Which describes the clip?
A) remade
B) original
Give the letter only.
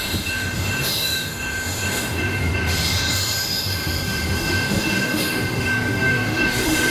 A